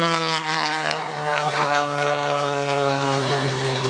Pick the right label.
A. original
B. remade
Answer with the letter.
B